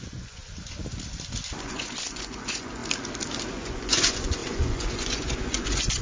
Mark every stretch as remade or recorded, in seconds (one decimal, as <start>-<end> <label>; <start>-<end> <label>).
0.0-0.4 remade; 0.4-1.6 recorded; 1.6-2.8 remade; 2.8-3.5 recorded; 3.5-6.0 remade